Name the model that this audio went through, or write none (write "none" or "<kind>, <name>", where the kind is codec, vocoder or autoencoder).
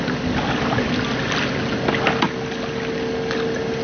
none